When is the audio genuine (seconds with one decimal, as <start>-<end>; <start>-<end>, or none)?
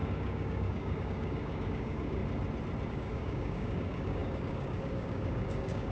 2.2-2.9